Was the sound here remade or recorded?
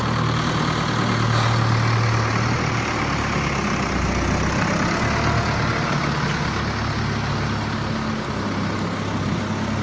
recorded